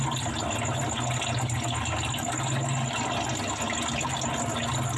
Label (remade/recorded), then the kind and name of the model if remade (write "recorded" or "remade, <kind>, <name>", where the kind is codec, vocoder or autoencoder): recorded